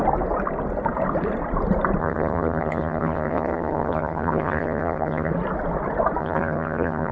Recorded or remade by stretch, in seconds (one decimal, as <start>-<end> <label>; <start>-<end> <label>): 0.0-2.0 recorded; 2.0-5.3 remade; 5.3-6.2 recorded; 6.2-7.1 remade